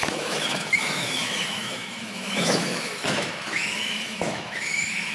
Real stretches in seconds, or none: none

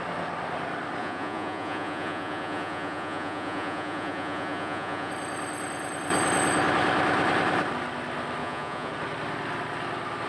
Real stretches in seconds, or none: 0.0-1.0; 5.1-8.4; 8.9-10.3

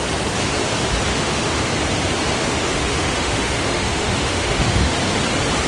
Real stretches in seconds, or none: 0.0-1.1; 1.7-2.3; 5.0-5.7

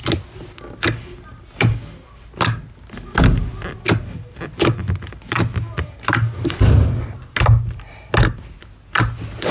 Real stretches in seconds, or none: 0.0-9.5